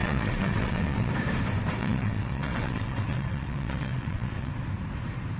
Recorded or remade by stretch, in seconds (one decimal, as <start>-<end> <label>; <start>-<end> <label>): 0.0-1.1 remade; 1.1-1.8 recorded; 1.8-4.5 remade; 4.5-5.4 recorded